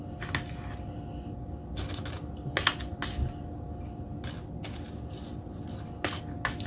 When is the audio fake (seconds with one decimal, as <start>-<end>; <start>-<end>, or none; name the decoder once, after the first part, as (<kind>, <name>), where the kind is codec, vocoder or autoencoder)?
none